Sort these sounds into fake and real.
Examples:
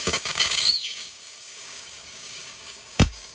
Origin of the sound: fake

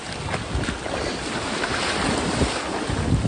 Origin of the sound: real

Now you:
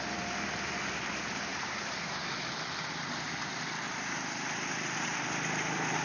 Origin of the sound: fake